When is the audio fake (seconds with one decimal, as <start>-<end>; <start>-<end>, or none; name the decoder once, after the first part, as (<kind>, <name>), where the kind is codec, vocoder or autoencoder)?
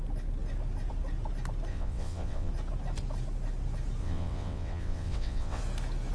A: 1.7-2.5 (vocoder, WaveNeXt); 4.0-5.6